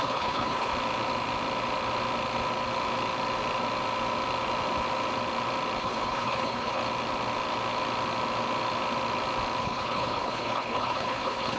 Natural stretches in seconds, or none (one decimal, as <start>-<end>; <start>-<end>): 0.7-5.8; 6.8-9.6

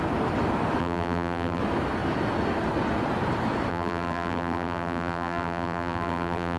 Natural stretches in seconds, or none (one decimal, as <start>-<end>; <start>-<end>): 0.0-0.8; 1.6-3.7

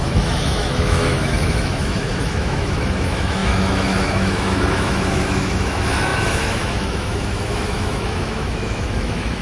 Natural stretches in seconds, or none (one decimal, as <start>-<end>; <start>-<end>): none